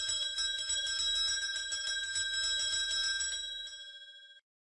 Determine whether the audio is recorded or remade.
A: recorded